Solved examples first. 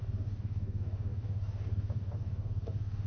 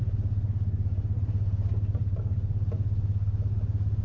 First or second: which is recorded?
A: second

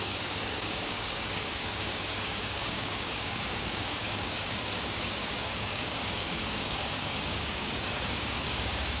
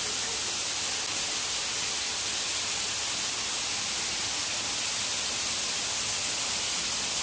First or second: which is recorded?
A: second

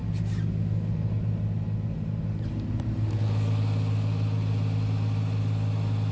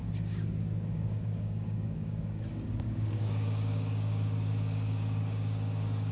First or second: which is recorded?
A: first